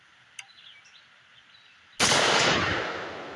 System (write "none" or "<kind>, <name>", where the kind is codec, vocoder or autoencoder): none